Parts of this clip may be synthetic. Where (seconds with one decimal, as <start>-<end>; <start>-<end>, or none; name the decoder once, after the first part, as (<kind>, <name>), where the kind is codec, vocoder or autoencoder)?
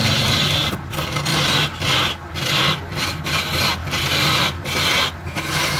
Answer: 1.3-1.8 (vocoder, BigVGAN v2); 3.8-4.8